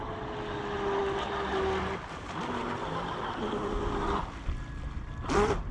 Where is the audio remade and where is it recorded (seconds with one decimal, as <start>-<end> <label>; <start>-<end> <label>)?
0.0-5.7 recorded